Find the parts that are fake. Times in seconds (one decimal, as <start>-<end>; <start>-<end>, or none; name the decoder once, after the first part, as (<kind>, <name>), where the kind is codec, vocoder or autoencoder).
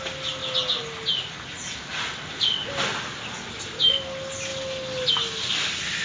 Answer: none